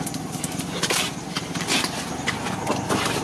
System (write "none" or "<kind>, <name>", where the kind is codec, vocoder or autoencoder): none